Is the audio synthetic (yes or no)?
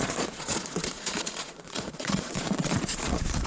yes